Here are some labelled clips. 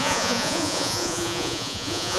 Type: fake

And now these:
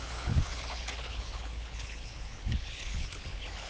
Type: fake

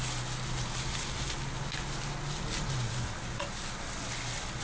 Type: real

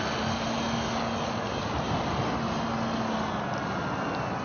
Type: real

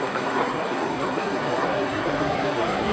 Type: fake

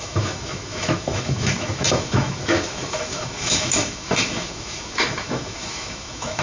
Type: fake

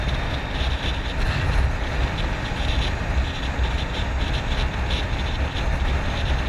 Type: real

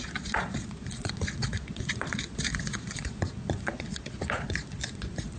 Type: fake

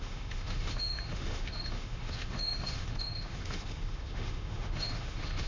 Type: fake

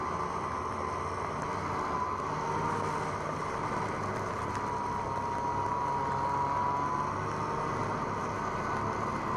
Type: real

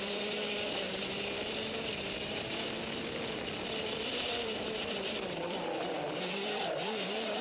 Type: fake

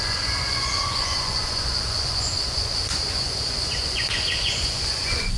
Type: fake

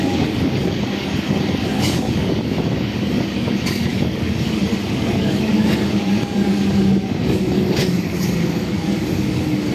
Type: fake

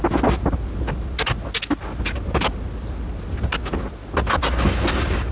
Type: real